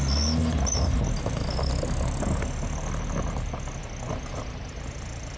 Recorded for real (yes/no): yes